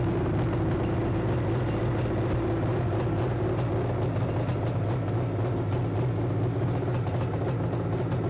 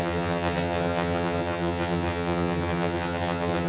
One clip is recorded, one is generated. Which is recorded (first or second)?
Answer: first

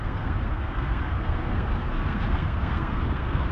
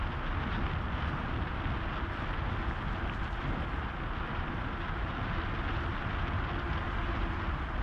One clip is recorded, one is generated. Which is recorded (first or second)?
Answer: second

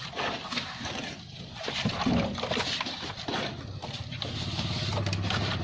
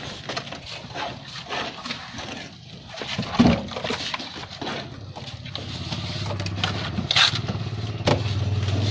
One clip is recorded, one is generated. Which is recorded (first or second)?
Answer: second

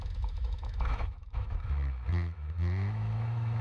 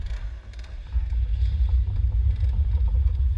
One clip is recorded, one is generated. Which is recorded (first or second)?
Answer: second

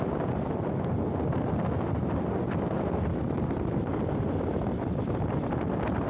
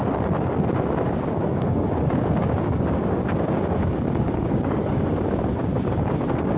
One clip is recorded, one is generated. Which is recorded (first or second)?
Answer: first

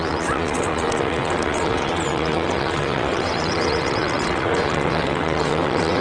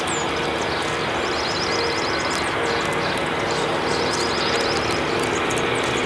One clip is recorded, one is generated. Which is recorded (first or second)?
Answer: second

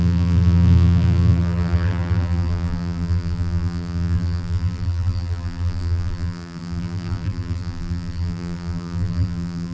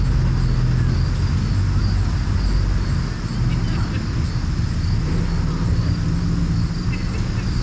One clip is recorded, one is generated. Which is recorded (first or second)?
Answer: second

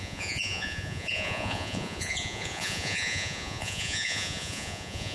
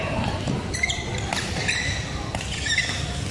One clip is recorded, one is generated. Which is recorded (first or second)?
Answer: second